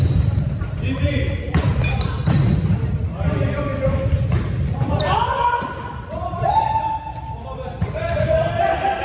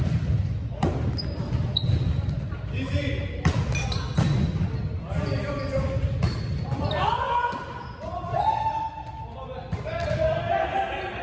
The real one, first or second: second